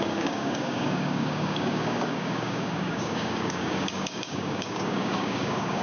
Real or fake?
fake